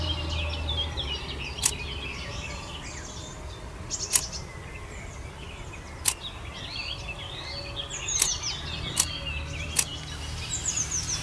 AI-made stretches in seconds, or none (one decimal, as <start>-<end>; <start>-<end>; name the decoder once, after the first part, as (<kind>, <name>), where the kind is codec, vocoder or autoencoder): none